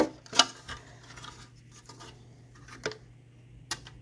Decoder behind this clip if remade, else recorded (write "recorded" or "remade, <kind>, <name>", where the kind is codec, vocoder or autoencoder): recorded